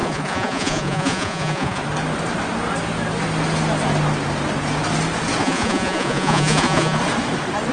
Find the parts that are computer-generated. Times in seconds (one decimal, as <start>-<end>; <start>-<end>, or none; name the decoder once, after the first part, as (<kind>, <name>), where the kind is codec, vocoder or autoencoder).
0.0-1.8 (vocoder, Vocos); 5.4-7.0

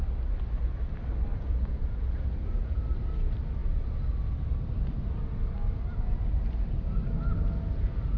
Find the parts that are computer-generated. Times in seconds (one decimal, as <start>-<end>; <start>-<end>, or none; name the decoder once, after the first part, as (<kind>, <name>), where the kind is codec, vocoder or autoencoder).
1.3-2.8 (vocoder, Vocos)

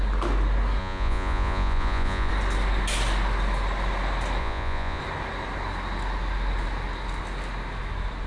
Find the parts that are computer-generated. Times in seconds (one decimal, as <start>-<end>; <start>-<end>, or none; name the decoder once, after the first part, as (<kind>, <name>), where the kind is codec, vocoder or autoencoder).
0.8-2.3 (vocoder, Vocos); 4.4-5.0

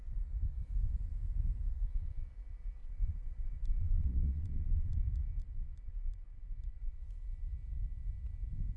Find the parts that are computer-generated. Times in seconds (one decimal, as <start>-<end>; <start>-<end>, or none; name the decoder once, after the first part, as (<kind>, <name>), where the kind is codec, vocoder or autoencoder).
2.8-5.0 (vocoder, Vocos); 5.4-7.0

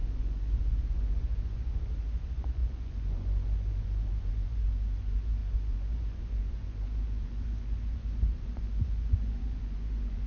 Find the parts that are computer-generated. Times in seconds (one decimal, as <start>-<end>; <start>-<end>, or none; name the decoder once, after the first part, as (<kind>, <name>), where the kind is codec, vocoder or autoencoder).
0.0-10.3 (vocoder, Vocos)

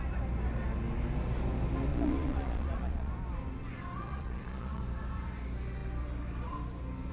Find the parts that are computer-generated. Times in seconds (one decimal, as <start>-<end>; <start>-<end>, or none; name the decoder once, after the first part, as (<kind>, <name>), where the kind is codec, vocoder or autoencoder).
1.9-3.1 (vocoder, Vocos); 4.0-4.8

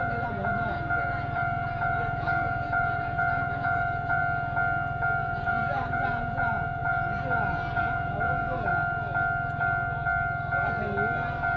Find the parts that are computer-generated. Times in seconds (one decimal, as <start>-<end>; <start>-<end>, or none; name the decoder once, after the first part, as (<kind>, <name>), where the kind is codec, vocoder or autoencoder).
0.0-4.2 (vocoder, Vocos); 5.2-8.7

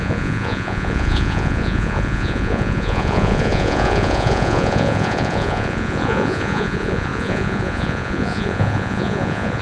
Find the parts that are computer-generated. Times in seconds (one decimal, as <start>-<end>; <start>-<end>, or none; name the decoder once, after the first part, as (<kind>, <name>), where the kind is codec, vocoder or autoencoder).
0.0-9.6 (vocoder, Vocos)